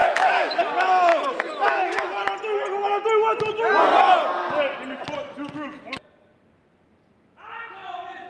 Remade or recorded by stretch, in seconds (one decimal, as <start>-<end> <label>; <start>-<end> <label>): 0.0-0.6 remade; 0.6-1.1 recorded; 1.1-2.2 remade; 2.2-8.3 recorded